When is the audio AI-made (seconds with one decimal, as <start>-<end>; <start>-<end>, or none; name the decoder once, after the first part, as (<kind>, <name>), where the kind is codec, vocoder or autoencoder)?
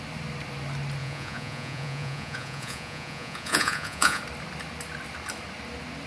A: 1.0-4.2 (vocoder, Vocos)